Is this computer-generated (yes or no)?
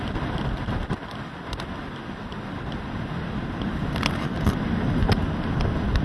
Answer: no